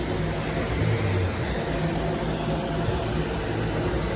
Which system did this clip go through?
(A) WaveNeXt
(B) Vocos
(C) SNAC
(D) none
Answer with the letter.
D